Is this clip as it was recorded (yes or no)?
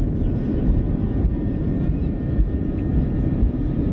no